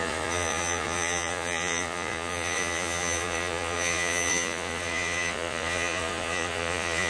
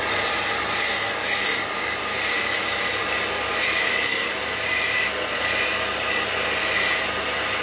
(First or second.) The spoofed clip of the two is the first